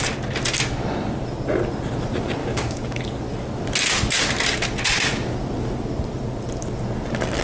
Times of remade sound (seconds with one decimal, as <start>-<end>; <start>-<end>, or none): 2.4-3.0